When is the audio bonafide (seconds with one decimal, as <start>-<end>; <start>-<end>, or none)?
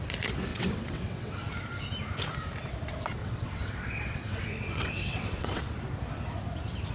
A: 0.0-0.5; 1.3-3.2; 5.6-6.9